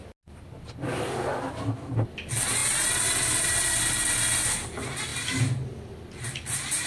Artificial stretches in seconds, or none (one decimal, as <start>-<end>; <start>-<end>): none